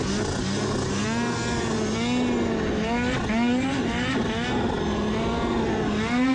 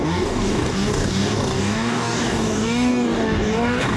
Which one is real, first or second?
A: first